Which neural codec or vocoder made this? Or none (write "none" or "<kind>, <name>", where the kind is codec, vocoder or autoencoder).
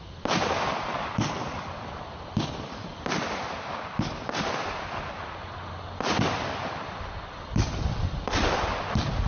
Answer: none